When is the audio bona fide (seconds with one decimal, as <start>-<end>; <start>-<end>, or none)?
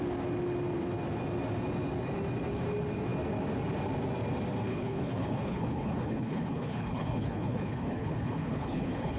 0.0-4.7